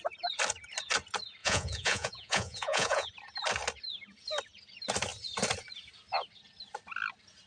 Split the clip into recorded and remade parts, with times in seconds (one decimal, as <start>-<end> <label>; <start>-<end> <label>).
0.0-1.4 recorded; 1.4-3.1 remade; 3.1-7.5 recorded